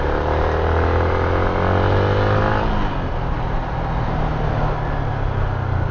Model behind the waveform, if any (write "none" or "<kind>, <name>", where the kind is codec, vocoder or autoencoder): none